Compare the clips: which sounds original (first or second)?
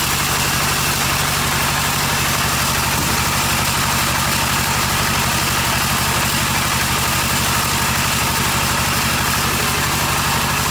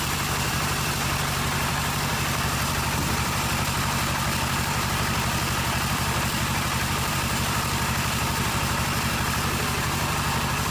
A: first